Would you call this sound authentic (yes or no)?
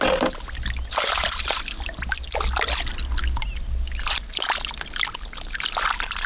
yes